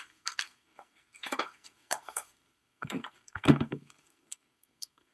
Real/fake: fake